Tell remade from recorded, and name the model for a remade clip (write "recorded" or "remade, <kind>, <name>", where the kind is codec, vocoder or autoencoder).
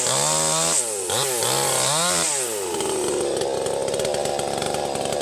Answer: recorded